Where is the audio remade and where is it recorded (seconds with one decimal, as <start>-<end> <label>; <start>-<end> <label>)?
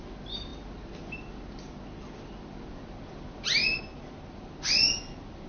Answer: 0.0-5.5 recorded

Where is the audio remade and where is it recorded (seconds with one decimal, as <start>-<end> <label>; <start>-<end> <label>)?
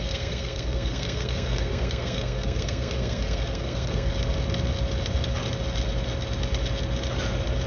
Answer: 0.0-4.1 remade; 4.1-7.7 recorded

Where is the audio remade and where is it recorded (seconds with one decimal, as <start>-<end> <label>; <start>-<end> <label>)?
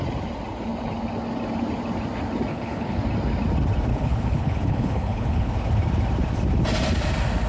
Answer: 0.0-2.5 recorded; 2.5-3.0 remade; 3.0-3.9 recorded; 3.9-5.5 remade; 5.5-7.5 recorded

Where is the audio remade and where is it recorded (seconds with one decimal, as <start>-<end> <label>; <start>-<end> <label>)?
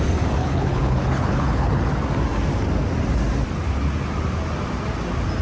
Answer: 0.0-0.4 recorded; 0.4-1.9 remade; 1.9-5.4 recorded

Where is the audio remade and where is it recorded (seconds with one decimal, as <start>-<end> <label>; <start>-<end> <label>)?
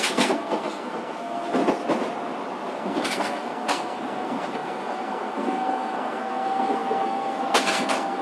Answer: 0.0-1.6 remade; 1.6-2.7 recorded; 2.7-8.2 remade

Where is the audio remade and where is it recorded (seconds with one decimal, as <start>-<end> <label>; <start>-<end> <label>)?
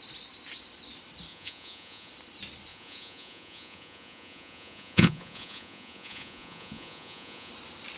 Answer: 0.0-1.3 recorded; 1.3-2.1 remade; 2.1-2.7 recorded; 2.7-7.5 remade; 7.5-8.0 recorded